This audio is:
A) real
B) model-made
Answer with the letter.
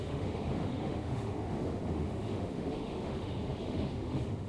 B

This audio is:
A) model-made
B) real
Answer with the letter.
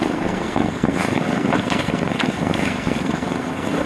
A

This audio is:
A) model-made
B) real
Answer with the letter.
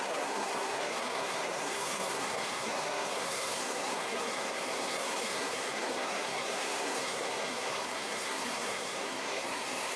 A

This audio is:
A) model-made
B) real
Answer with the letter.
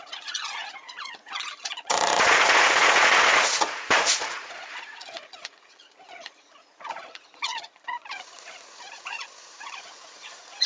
A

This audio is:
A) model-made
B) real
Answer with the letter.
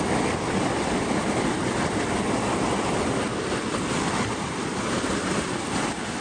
B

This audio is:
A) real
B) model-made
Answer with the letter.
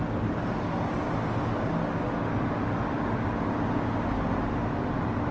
A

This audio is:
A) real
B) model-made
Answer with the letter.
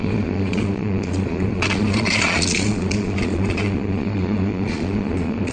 B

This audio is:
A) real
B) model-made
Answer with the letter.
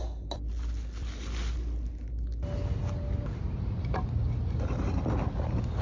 A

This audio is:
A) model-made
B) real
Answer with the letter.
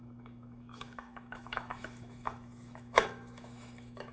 A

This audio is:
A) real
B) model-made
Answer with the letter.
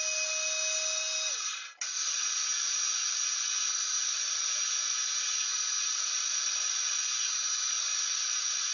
A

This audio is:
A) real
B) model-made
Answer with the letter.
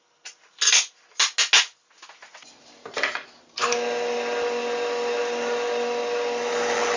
A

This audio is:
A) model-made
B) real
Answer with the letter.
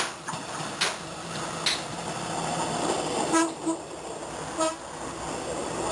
B